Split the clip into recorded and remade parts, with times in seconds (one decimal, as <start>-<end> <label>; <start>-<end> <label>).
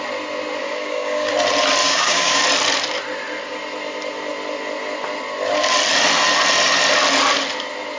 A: 0.0-0.6 recorded; 0.6-1.3 remade; 1.3-1.8 recorded; 1.8-2.4 remade; 2.4-8.0 recorded